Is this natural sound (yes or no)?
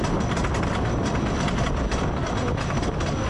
yes